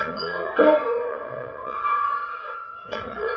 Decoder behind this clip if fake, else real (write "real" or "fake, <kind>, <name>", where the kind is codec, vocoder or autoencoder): fake, vocoder, WaveNeXt